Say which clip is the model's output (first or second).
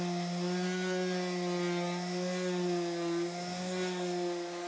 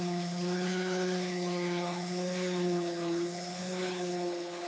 second